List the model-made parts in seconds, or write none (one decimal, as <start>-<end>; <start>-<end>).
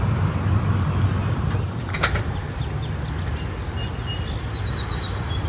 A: none